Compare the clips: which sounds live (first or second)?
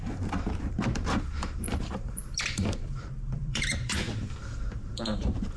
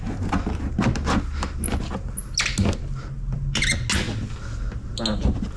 second